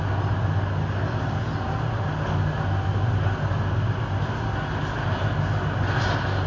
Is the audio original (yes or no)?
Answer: yes